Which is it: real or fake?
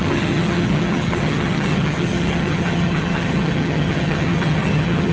fake